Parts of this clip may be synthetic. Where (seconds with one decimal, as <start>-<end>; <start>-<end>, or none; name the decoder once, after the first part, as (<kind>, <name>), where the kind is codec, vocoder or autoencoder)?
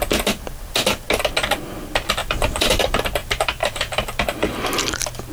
2.2-2.8 (vocoder, BigVGAN v2); 3.2-4.7